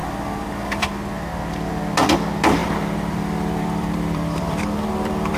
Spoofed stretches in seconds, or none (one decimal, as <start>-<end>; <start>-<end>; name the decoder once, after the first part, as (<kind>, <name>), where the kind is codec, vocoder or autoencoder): 0.0-0.9 (vocoder, BigVGAN v2); 2.6-5.4